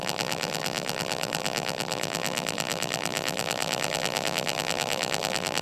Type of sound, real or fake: fake